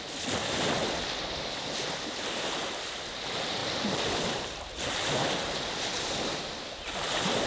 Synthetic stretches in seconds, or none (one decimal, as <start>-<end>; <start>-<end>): 0.8-2.2